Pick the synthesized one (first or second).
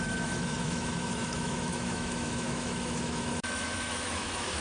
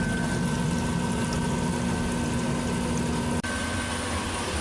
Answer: first